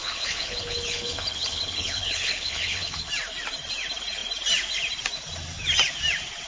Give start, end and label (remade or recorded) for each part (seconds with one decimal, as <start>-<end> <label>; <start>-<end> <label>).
0.0-3.1 remade; 3.1-6.5 recorded